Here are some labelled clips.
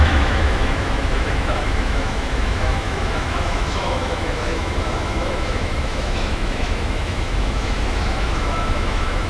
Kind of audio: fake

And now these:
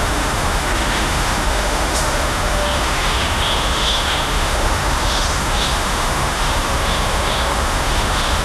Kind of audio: fake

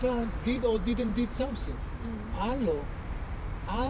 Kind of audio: fake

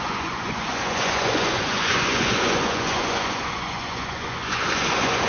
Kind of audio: fake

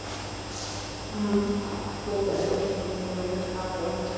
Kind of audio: real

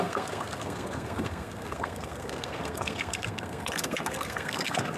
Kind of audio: fake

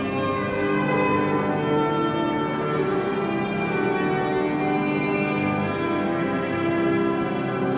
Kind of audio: real